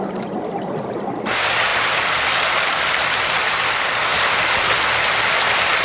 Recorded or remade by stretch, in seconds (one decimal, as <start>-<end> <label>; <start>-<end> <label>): 0.0-1.7 remade; 1.7-2.9 recorded; 2.9-4.1 remade; 4.1-5.3 recorded; 5.3-5.8 remade